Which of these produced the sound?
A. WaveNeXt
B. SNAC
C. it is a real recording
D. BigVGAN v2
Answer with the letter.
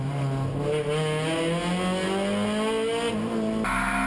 C